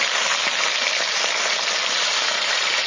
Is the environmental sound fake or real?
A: real